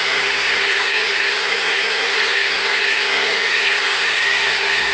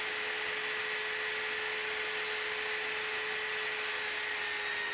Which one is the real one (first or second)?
second